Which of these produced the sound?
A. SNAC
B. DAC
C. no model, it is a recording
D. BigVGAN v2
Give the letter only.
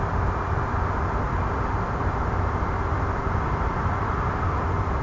C